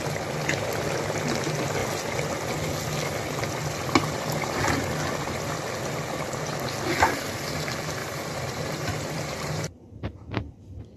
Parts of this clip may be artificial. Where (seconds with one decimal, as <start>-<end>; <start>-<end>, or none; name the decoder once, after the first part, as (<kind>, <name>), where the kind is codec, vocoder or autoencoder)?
8.0-10.0 (vocoder, BigVGAN v2)